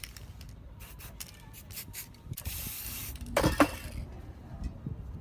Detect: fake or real fake